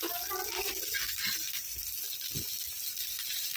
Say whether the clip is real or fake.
real